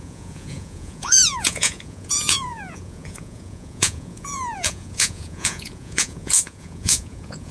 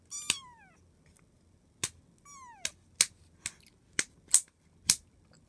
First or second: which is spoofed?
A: first